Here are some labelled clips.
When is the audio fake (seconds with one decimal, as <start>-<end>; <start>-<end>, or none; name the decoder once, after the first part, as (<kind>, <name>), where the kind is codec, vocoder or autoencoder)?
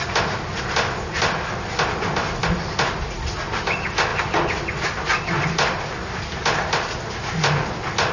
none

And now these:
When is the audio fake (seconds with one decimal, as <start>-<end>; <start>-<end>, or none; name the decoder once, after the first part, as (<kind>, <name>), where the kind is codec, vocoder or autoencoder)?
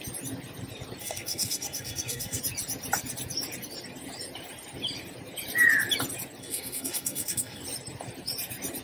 1.0-2.4 (codec, SNAC); 6.4-7.6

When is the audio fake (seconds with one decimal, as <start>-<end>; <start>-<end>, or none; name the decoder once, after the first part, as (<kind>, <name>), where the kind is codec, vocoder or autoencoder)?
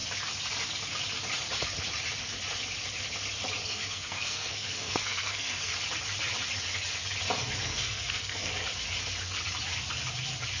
3.6-5.7 (codec, SNAC); 7.6-8.5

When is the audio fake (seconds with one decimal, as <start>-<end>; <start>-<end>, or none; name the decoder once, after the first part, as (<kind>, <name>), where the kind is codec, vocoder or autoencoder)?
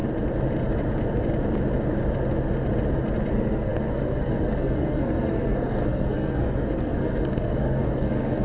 3.3-8.4 (codec, SNAC)